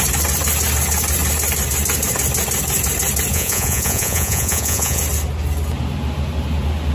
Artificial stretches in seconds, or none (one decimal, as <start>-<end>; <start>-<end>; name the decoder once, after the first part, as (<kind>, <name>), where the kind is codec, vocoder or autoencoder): 3.3-5.0 (vocoder, Vocos)